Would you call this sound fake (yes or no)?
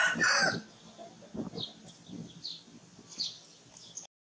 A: no